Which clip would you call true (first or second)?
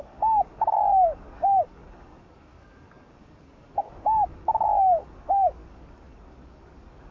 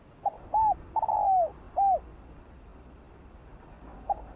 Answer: second